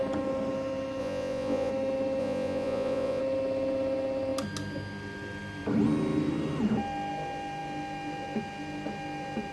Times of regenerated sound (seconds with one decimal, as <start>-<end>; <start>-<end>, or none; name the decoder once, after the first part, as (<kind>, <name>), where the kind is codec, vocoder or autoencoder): 1.0-1.7 (vocoder, Vocos); 2.2-3.2

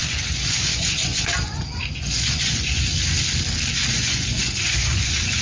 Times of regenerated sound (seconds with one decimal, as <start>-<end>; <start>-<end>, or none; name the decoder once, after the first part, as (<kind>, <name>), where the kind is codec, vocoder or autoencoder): 0.0-2.9 (vocoder, Vocos); 3.9-5.4